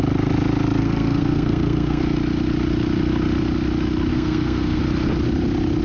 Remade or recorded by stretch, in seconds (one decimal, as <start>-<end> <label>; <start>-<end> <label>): 0.0-0.8 recorded; 0.8-2.0 remade; 2.0-4.1 recorded; 4.1-4.8 remade; 4.8-5.8 recorded